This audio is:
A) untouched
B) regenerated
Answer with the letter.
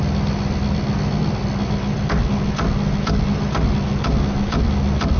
A